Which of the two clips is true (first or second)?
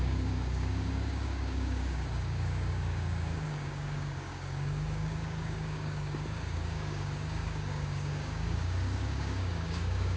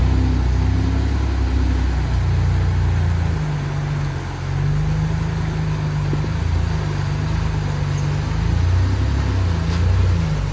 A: second